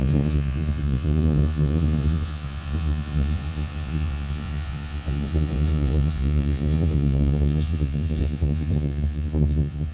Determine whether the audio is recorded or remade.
remade